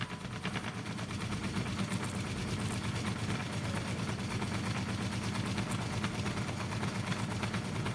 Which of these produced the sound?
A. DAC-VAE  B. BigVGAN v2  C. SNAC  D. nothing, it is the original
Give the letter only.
D